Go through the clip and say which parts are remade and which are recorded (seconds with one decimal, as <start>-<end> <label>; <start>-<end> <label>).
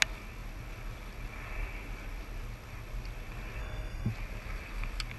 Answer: 0.0-3.6 recorded; 3.6-4.1 remade; 4.1-5.2 recorded